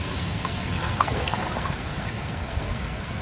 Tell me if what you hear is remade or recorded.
remade